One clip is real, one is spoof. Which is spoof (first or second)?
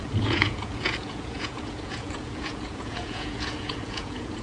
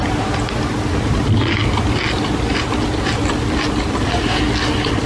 first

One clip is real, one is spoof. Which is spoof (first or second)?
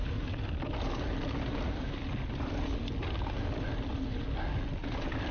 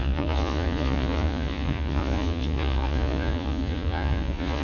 second